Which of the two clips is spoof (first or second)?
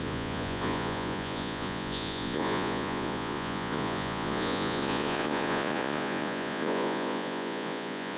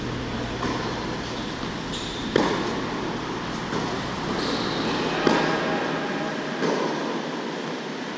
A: first